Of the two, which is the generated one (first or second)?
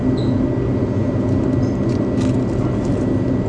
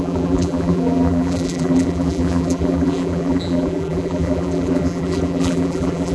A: second